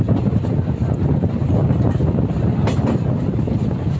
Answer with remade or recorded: recorded